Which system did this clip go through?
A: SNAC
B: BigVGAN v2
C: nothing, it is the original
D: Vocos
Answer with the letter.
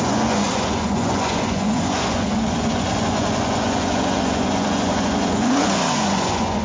D